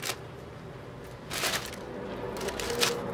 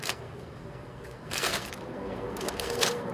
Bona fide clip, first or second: first